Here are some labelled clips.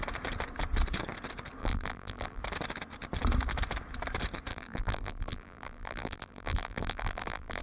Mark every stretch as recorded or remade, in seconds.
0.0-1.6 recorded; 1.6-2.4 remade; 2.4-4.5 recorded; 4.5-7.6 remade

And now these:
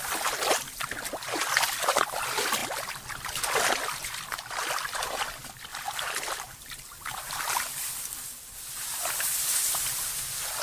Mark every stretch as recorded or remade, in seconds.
0.0-5.7 recorded; 5.7-7.9 remade; 7.9-10.6 recorded

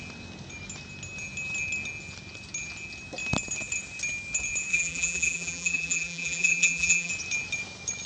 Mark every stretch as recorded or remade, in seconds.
0.0-4.7 recorded; 4.7-7.1 remade; 7.1-8.1 recorded